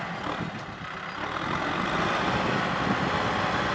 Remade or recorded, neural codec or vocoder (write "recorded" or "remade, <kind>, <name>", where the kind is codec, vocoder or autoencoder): recorded